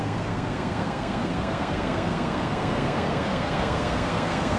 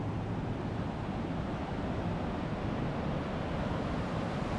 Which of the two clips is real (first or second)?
second